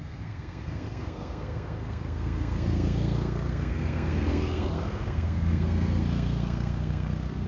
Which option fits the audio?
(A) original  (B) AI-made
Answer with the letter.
B